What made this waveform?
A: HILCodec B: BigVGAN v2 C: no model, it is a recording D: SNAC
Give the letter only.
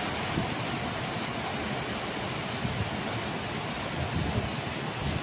C